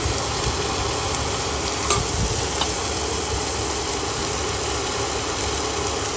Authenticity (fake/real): real